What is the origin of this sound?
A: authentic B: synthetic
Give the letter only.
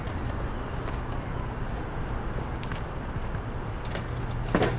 A